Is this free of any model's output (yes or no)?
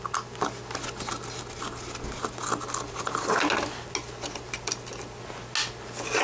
yes